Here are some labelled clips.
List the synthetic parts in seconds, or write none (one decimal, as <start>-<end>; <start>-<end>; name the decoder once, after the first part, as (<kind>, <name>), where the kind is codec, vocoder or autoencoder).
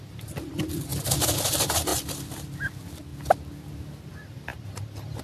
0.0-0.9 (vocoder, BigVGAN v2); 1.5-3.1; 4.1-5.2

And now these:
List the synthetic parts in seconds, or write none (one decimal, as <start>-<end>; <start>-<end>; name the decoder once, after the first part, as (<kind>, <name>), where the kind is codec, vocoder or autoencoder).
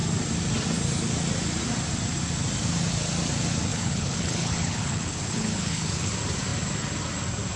3.7-6.1 (codec, HILCodec)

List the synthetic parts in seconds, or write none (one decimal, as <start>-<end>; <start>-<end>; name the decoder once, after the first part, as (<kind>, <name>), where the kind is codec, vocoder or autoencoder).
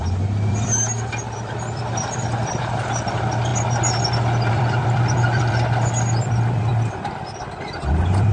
0.0-3.5 (vocoder, BigVGAN v2); 4.5-6.7; 7.9-8.3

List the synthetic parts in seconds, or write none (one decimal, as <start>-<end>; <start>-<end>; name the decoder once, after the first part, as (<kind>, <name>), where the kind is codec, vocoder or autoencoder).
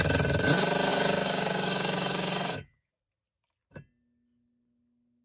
0.9-3.1 (codec, DAC)